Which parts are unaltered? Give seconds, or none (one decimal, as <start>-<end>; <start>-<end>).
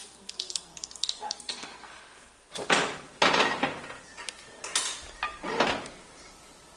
2.5-6.8